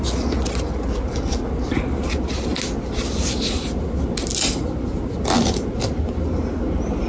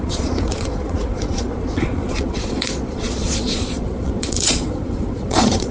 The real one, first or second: first